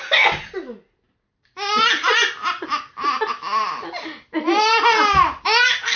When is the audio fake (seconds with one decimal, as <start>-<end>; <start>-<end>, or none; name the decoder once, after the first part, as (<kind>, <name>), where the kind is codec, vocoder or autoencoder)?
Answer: none

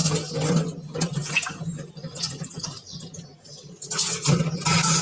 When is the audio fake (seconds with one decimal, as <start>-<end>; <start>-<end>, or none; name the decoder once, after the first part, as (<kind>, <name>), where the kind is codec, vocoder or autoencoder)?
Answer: 0.0-3.3 (vocoder, BigVGAN v2)

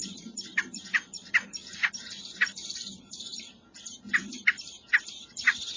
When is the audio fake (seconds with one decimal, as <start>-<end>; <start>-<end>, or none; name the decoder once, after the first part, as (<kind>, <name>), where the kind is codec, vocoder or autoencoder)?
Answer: 0.0-3.5 (vocoder, BigVGAN v2); 4.2-4.7

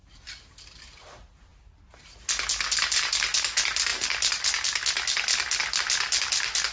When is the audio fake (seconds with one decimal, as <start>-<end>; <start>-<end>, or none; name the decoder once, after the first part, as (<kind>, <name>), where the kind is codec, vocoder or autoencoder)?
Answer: none

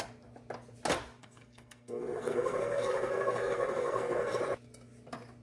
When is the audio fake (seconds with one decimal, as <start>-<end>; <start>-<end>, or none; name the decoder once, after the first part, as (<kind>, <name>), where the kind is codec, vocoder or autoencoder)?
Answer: 1.2-4.4 (codec, SNAC)

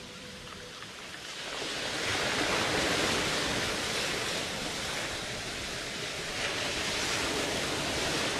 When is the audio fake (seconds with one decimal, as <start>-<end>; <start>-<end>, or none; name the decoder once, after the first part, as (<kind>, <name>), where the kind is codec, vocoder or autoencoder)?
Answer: 0.0-2.1 (vocoder, BigVGAN v2); 2.8-5.2; 6.1-8.4

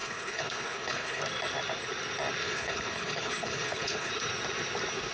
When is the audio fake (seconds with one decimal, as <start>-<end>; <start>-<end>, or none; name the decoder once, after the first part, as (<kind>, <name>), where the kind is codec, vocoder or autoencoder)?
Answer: 0.0-1.2 (codec, HILCodec); 2.4-4.1